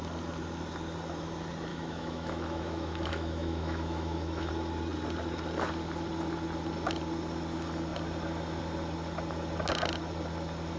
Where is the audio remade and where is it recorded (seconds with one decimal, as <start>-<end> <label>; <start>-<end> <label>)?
0.0-1.7 recorded; 1.7-4.5 remade; 4.5-10.8 recorded